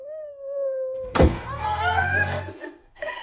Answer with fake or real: fake